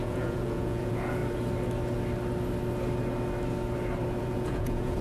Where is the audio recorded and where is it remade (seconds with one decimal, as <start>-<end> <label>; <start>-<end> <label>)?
0.0-1.2 remade; 1.2-4.2 recorded; 4.2-5.0 remade